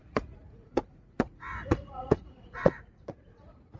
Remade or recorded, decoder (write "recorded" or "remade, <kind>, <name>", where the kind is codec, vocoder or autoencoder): remade, vocoder, Vocos